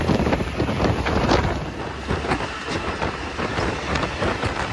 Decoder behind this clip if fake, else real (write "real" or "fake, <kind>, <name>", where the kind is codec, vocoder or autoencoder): real